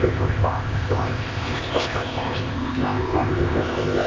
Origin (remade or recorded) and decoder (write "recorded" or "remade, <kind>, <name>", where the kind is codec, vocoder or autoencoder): remade, codec, ZipCodec